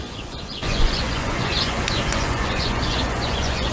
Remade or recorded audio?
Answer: remade